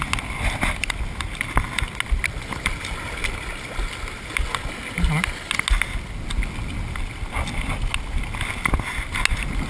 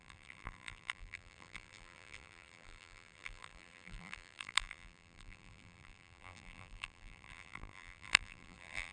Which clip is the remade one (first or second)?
second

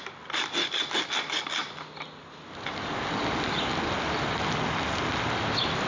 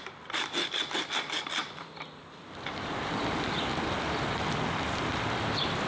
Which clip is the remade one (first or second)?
second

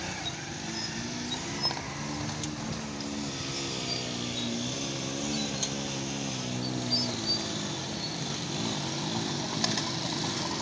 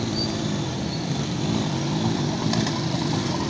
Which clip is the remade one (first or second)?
second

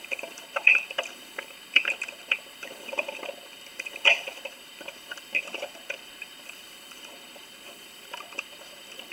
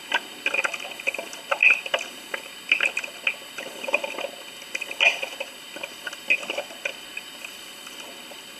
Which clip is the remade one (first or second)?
first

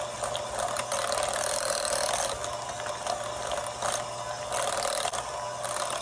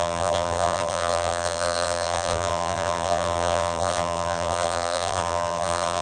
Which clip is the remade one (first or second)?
second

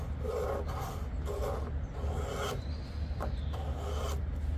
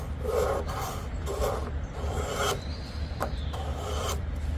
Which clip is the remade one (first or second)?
second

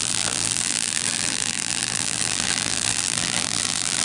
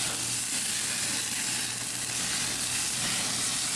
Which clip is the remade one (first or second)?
first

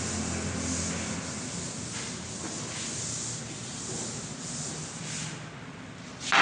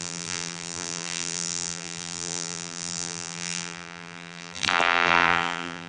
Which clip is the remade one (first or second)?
second